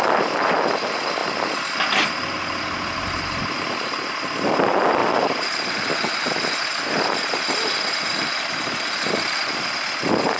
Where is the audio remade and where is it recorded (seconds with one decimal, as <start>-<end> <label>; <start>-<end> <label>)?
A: 0.0-5.0 recorded; 5.0-5.7 remade; 5.7-10.4 recorded